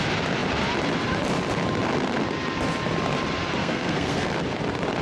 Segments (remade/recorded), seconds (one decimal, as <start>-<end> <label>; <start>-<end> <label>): 0.0-3.6 recorded; 3.6-4.3 remade; 4.3-5.0 recorded